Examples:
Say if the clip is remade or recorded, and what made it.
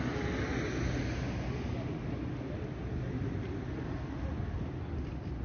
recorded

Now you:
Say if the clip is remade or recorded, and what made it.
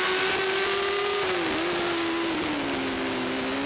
recorded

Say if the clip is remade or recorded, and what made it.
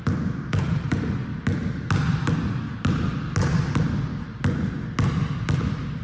recorded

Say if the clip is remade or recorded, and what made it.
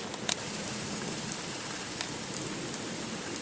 recorded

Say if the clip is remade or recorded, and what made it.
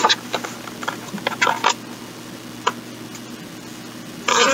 recorded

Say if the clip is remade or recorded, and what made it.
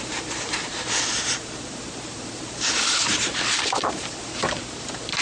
remade, vocoder, BigVGAN v2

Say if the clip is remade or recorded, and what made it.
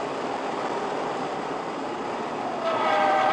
recorded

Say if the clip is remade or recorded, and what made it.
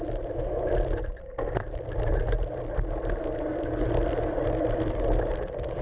recorded